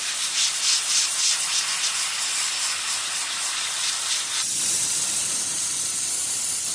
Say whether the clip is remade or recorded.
recorded